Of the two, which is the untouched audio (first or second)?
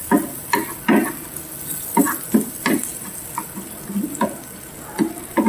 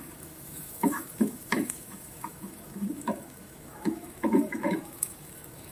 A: first